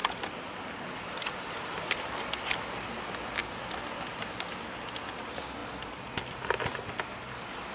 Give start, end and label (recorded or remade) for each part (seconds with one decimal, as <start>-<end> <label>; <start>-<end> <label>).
0.0-7.7 recorded

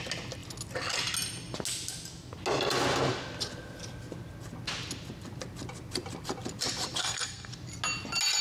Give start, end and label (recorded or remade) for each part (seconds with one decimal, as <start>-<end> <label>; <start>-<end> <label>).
0.0-7.0 recorded; 7.0-7.5 remade; 7.5-8.4 recorded

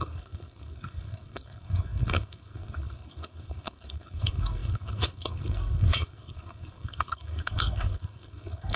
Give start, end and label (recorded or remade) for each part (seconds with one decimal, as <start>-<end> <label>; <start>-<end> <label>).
0.0-8.8 remade

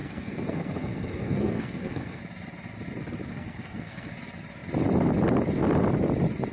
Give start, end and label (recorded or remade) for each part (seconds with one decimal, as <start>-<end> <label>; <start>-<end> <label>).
0.0-2.2 remade; 2.2-3.3 recorded; 3.3-4.1 remade; 4.1-6.5 recorded

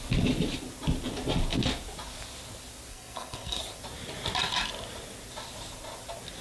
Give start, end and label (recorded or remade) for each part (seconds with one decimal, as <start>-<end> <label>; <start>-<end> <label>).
0.0-2.9 recorded; 2.9-3.6 remade; 3.6-6.4 recorded

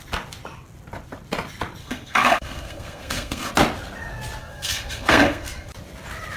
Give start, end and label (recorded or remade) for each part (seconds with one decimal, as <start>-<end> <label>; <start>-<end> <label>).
0.0-1.8 recorded; 1.8-3.5 remade; 3.5-4.4 recorded; 4.4-5.7 remade; 5.7-6.4 recorded